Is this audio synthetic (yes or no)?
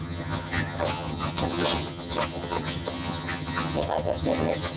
yes